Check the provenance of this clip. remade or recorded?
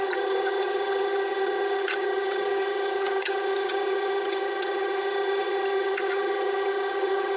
remade